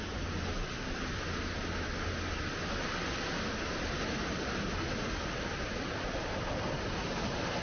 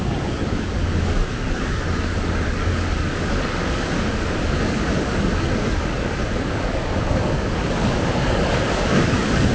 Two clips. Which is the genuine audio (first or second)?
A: first